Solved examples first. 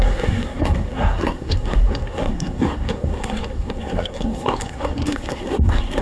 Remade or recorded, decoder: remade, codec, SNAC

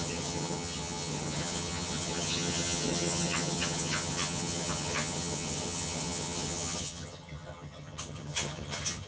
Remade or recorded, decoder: remade, vocoder, HiFi-GAN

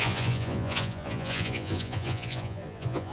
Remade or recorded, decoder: remade, vocoder, Vocos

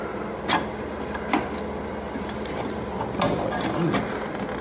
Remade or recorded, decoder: recorded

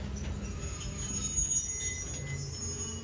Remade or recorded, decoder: recorded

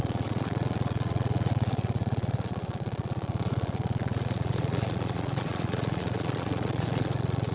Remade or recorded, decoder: remade, vocoder, Vocos